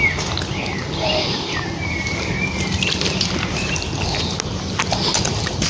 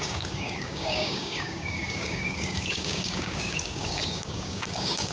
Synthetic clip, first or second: second